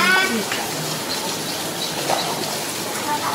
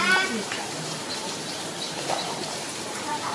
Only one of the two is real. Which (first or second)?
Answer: first